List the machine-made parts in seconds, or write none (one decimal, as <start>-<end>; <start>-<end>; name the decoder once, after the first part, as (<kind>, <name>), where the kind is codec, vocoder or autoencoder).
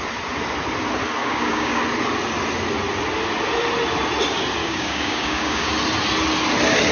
1.2-1.8 (codec, DAC); 4.6-5.7